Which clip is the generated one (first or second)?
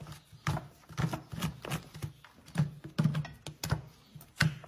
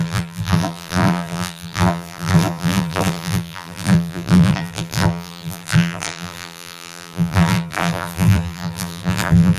second